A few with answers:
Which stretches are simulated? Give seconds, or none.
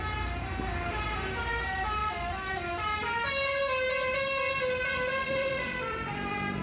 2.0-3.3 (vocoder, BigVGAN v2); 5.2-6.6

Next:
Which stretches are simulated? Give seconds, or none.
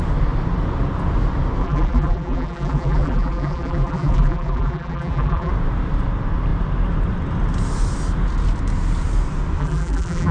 1.6-5.5 (vocoder, BigVGAN v2); 9.6-10.3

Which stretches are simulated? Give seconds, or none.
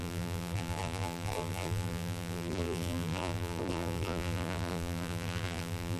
0.0-6.0 (vocoder, BigVGAN v2)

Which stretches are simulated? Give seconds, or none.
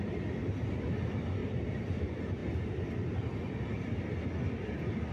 1.4-2.0 (vocoder, BigVGAN v2)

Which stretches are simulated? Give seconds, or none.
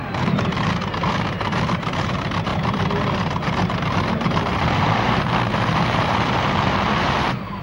0.0-7.6 (vocoder, BigVGAN v2)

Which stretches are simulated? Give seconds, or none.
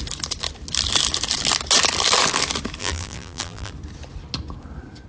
2.8-3.7 (vocoder, BigVGAN v2)